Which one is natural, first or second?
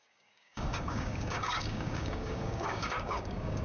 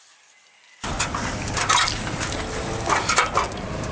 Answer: second